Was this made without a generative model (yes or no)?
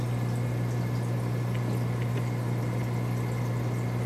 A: yes